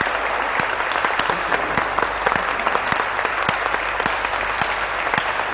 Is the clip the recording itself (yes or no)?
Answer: no